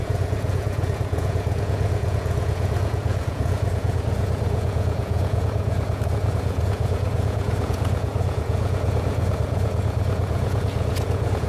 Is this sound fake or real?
fake